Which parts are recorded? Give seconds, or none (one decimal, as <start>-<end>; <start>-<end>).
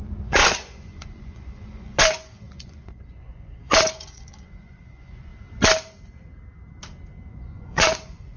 5.3-7.3